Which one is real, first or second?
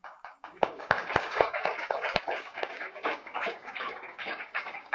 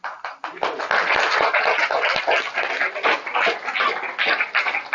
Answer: second